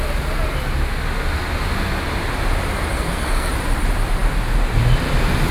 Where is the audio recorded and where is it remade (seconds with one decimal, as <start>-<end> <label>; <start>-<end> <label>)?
0.0-2.9 recorded; 2.9-3.5 remade; 3.5-5.5 recorded